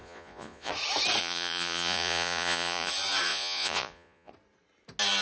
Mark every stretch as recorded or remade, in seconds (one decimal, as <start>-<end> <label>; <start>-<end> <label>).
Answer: 0.0-0.7 remade; 0.7-1.2 recorded; 1.2-2.9 remade; 2.9-3.3 recorded; 3.3-4.3 remade; 4.3-5.2 recorded